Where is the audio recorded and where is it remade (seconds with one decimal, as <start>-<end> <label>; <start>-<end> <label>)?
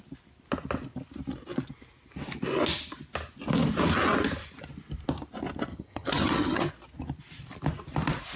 0.0-5.7 recorded; 5.7-6.7 remade; 6.7-8.4 recorded